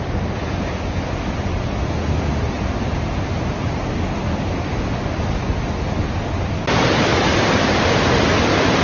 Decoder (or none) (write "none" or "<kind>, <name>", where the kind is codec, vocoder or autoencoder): none